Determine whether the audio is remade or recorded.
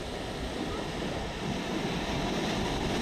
recorded